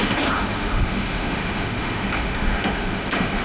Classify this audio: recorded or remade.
remade